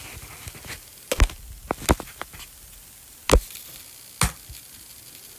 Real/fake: real